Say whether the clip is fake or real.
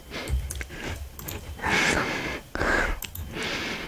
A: real